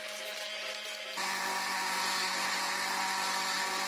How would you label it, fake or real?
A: real